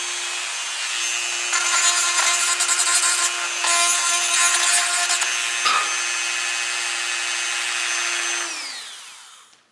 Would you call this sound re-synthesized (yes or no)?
no